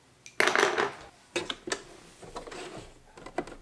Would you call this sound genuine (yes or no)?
yes